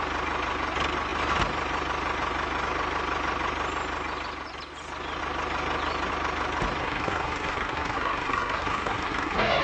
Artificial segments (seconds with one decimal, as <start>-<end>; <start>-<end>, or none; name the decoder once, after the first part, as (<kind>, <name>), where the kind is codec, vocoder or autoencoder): 6.8-9.6 (codec, SNAC)